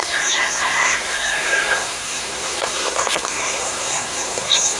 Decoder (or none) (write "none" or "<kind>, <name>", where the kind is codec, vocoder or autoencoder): codec, SNAC